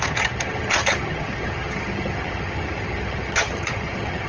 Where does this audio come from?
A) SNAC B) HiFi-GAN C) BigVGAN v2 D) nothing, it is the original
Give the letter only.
B